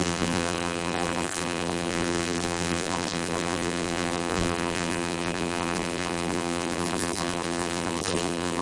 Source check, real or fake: fake